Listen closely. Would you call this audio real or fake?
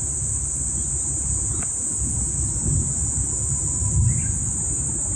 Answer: real